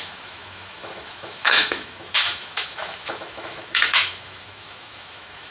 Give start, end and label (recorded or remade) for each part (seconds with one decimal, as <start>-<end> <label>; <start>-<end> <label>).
0.0-5.5 remade